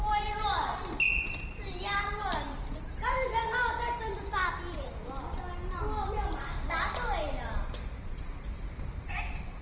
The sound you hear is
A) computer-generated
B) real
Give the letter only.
B